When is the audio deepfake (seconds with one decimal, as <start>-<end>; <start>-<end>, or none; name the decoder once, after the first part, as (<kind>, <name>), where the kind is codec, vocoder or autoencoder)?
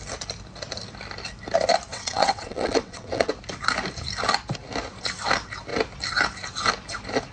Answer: 1.9-3.3 (vocoder, WaveNeXt)